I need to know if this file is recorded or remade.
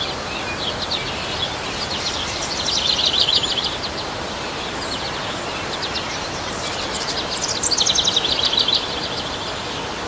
recorded